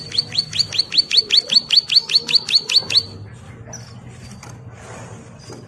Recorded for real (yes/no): yes